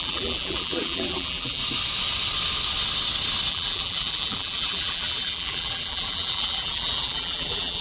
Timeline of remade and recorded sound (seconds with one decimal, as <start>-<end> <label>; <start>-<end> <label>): 0.0-1.6 remade; 1.6-3.5 recorded; 3.5-7.8 remade